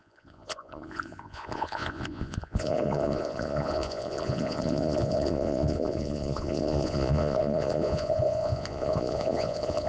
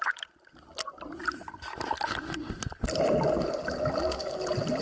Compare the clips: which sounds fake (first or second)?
first